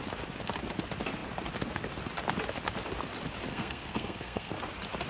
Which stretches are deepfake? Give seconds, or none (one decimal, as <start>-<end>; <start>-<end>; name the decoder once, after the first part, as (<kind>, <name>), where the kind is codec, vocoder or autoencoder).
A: 3.5-4.5 (codec, SNAC)